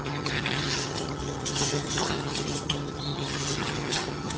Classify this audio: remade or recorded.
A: remade